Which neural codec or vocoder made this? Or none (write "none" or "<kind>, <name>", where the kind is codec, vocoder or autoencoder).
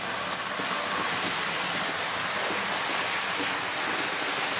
none